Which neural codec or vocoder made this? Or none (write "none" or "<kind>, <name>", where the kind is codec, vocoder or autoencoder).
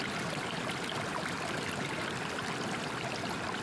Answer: none